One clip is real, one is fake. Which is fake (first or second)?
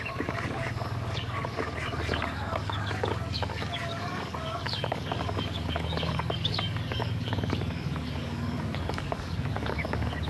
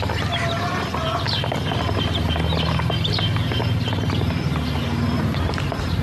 first